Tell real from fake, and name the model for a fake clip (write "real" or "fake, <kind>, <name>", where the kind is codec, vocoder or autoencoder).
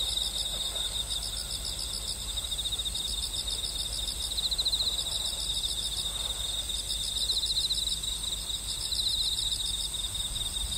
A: real